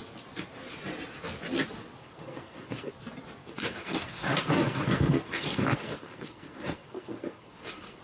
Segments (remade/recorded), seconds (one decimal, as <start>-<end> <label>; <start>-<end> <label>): 0.0-2.0 recorded; 2.0-2.9 remade; 2.9-3.4 recorded; 3.4-8.0 remade